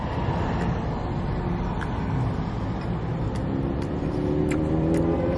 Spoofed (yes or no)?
no